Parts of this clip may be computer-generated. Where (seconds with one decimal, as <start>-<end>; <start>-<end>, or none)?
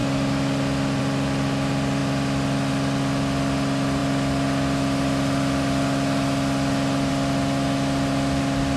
none